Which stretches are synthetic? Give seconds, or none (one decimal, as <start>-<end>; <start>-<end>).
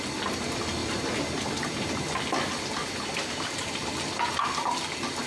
0.8-2.0; 2.8-3.8